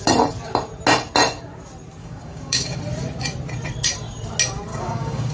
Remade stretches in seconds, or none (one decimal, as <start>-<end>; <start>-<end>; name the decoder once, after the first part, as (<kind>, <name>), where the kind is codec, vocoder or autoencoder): 2.0-2.8 (codec, DAC); 4.7-5.3